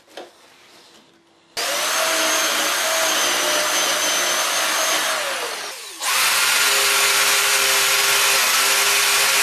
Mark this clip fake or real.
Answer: real